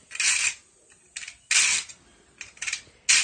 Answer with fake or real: real